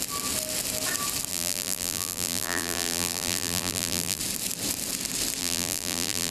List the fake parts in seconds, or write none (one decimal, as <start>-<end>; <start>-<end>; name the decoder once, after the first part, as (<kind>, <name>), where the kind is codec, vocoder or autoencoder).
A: 1.3-4.2 (vocoder, BigVGAN v2); 5.4-6.3